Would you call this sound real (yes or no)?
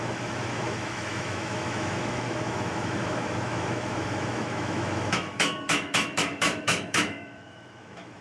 no